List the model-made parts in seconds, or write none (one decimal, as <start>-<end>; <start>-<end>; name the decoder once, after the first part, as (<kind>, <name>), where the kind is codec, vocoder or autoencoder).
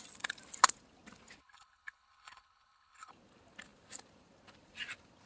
1.4-3.1 (codec, HILCodec)